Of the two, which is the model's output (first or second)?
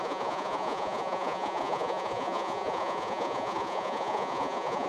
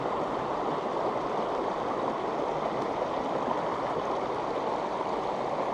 first